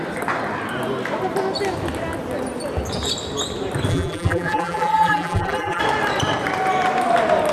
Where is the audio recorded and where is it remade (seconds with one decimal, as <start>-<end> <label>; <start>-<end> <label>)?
0.0-3.9 recorded; 3.9-5.8 remade; 5.8-7.5 recorded